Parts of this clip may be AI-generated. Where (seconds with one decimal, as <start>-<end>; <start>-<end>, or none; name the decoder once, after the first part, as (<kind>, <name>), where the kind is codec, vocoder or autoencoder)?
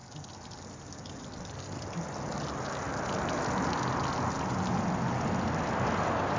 none